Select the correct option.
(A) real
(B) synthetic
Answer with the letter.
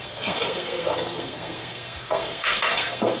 B